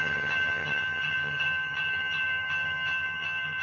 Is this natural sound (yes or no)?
no